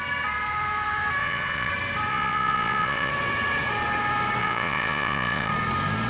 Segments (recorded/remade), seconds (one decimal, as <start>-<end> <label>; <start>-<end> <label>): 0.0-1.2 recorded; 1.2-1.7 remade; 1.7-2.1 recorded; 2.1-3.1 remade; 3.1-4.4 recorded; 4.4-5.5 remade; 5.5-6.1 recorded